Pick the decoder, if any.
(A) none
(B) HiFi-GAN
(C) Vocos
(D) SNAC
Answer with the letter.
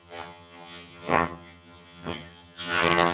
B